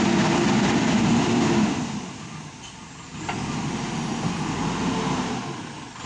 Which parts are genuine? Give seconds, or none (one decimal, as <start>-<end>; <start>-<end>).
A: 0.0-6.1